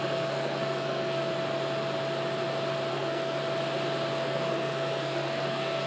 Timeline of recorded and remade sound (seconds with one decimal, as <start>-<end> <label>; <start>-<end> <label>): 0.0-1.3 remade; 1.3-2.9 recorded; 2.9-3.4 remade; 3.4-4.1 recorded; 4.1-5.9 remade